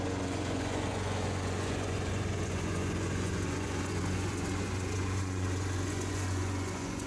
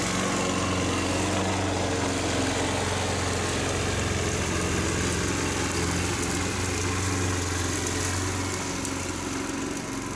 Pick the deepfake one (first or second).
first